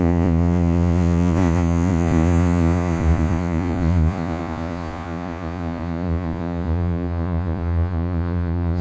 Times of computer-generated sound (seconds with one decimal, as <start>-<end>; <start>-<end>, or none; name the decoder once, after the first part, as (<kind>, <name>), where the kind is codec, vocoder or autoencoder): 0.0-8.8 (vocoder, Vocos)